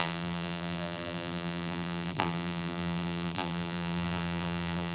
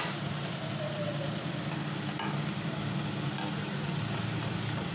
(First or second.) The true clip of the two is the second